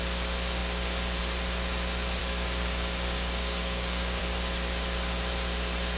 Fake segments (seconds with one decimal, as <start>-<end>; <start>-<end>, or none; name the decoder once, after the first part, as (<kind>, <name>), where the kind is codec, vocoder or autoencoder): 2.2-4.2 (codec, DAC)